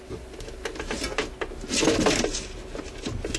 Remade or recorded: recorded